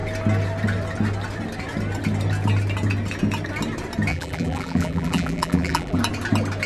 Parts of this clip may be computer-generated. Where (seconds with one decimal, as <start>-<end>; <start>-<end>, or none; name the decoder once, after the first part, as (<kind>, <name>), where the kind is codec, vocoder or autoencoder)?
4.1-6.0 (vocoder, BigVGAN v2)